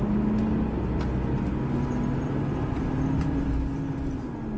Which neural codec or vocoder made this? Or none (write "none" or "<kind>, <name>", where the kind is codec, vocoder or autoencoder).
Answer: none